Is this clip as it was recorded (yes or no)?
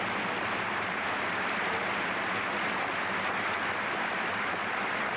yes